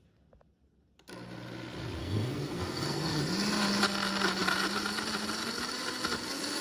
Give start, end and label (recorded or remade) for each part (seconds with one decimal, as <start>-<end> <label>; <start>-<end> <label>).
0.0-2.0 recorded; 2.0-3.2 remade; 3.2-6.6 recorded